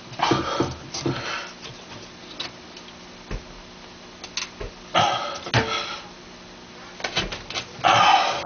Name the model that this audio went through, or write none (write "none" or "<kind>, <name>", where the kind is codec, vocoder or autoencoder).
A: none